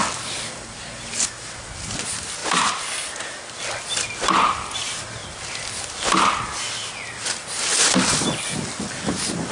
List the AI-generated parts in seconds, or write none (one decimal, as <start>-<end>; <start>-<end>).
2.4-3.6; 5.2-5.9